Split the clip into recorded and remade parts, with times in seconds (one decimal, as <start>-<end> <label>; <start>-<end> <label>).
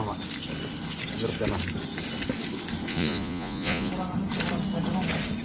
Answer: 0.0-2.9 recorded; 2.9-3.9 remade; 3.9-5.4 recorded